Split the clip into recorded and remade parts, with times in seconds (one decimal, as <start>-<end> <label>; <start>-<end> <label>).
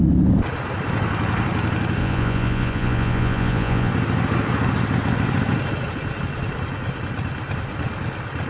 0.0-2.0 recorded; 2.0-3.9 remade; 3.9-8.5 recorded